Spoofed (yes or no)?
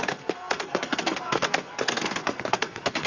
yes